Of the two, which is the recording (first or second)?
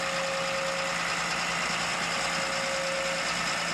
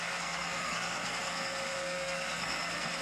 first